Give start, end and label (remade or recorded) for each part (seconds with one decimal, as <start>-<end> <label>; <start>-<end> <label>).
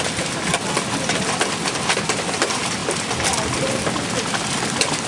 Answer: 0.0-5.1 recorded